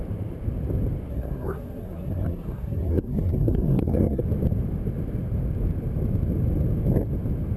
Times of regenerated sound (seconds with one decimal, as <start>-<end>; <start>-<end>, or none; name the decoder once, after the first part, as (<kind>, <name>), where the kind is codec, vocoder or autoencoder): 1.1-4.2 (codec, SNAC)